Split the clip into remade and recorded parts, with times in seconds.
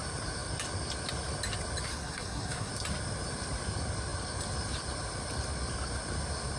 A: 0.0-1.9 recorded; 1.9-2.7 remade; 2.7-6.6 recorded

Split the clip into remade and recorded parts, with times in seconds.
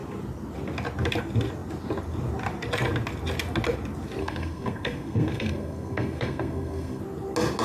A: 0.0-4.2 recorded; 4.2-7.0 remade; 7.0-7.6 recorded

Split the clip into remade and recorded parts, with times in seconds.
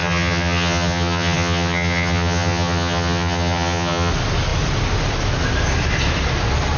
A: 0.0-4.1 remade; 4.1-6.8 recorded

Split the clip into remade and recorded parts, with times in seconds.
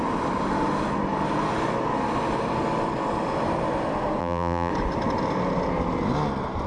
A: 0.0-4.2 recorded; 4.2-4.7 remade; 4.7-6.7 recorded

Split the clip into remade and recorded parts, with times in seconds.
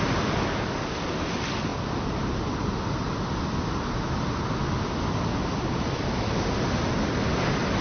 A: 0.0-7.8 recorded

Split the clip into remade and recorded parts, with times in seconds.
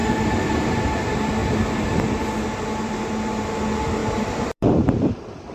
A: 0.0-0.8 remade; 0.8-4.0 recorded; 4.0-4.9 remade; 4.9-5.5 recorded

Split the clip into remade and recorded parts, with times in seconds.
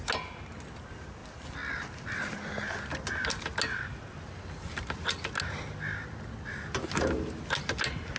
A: 0.0-8.2 recorded